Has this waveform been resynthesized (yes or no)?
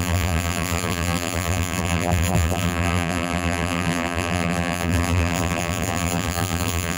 yes